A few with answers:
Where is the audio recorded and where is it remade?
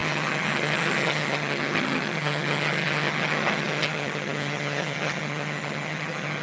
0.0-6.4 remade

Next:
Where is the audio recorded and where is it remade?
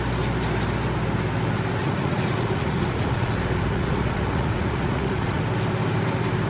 0.0-1.8 recorded; 1.8-5.4 remade; 5.4-6.5 recorded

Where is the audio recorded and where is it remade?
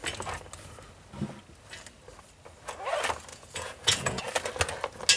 0.0-3.3 recorded; 3.3-4.2 remade; 4.2-5.2 recorded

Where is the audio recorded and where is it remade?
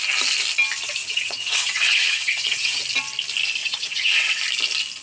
0.0-1.0 recorded; 1.0-2.8 remade; 2.8-3.6 recorded; 3.6-4.4 remade; 4.4-5.0 recorded